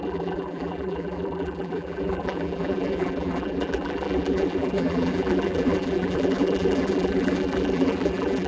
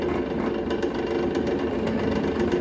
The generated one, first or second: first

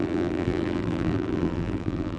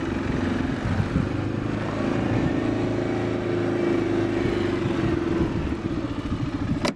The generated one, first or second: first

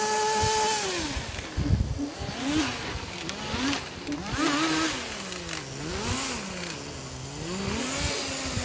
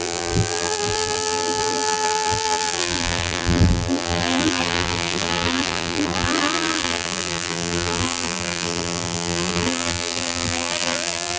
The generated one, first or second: second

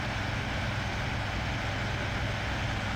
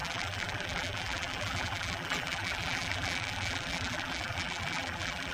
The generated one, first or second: second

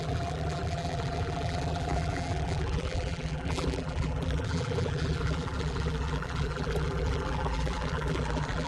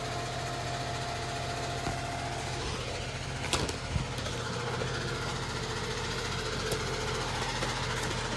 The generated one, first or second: first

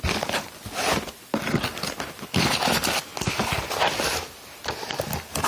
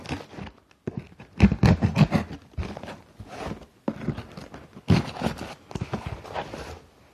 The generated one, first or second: first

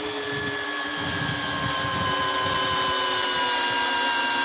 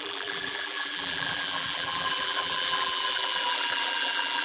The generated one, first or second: second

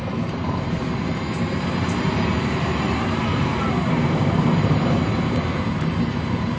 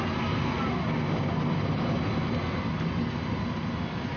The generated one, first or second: first